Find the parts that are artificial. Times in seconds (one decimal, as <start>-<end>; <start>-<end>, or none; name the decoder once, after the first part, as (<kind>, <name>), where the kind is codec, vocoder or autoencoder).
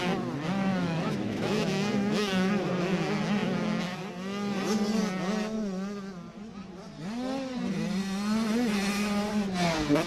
0.7-2.5 (autoencoder, DAC-VAE)